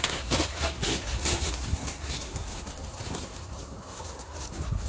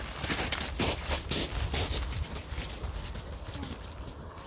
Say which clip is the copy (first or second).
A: first